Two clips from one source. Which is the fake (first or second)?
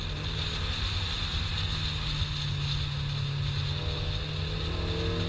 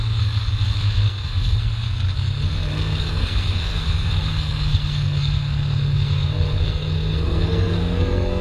second